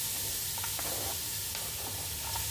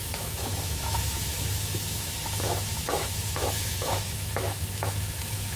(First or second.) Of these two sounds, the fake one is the second